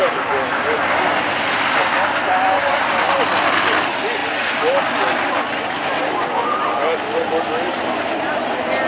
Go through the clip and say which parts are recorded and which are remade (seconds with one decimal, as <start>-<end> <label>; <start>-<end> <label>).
0.0-8.9 recorded